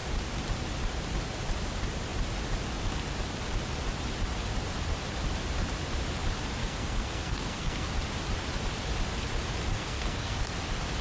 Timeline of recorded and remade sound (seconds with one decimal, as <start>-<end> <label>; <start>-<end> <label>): 0.0-6.6 recorded; 6.6-7.9 remade; 7.9-9.7 recorded; 9.7-10.5 remade; 10.5-11.0 recorded